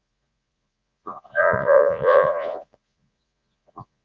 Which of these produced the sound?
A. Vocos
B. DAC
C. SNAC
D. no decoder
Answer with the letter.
A